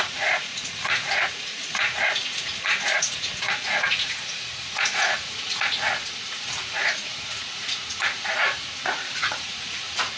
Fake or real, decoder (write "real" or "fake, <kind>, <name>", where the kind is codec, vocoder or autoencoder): fake, vocoder, Vocos